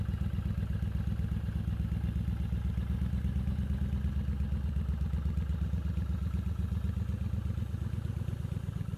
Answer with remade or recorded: recorded